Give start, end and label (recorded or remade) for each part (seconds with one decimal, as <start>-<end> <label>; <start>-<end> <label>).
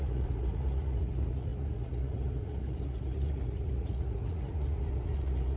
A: 0.0-5.6 remade